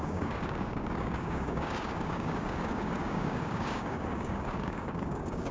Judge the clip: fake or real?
fake